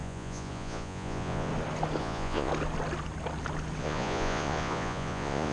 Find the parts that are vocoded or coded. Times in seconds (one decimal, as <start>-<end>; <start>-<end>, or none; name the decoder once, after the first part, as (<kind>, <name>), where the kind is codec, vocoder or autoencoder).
0.0-1.5 (vocoder, Vocos); 2.0-2.5; 3.8-5.5